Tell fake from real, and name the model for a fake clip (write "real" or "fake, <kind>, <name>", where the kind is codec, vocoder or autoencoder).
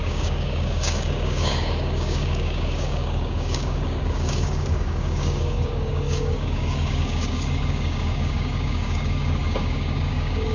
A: fake, codec, DAC